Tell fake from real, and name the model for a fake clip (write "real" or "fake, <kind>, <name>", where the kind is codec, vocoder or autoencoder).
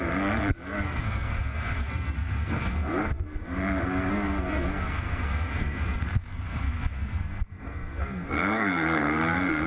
fake, codec, SNAC